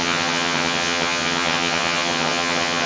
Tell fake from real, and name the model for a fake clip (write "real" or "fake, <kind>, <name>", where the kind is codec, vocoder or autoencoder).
fake, vocoder, HiFi-GAN